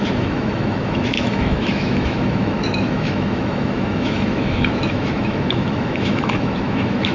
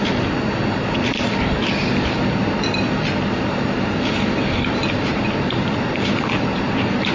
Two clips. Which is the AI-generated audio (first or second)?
first